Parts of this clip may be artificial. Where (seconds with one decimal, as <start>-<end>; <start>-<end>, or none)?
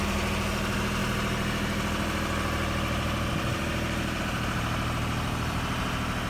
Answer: none